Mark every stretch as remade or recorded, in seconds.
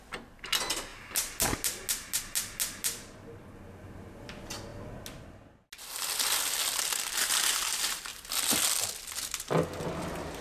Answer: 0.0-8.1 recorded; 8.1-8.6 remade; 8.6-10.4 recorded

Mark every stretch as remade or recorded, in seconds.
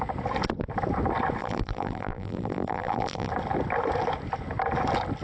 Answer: 0.0-1.4 recorded; 1.4-3.3 remade; 3.3-5.2 recorded